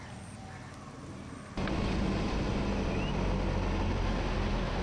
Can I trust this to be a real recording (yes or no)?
yes